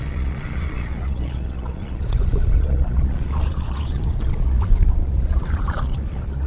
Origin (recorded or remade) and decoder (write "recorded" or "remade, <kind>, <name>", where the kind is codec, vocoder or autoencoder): remade, vocoder, Vocos